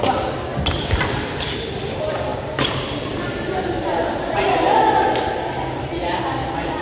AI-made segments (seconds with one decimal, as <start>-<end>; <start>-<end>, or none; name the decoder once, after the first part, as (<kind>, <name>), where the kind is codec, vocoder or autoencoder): 0.0-6.8 (vocoder, BigVGAN v2)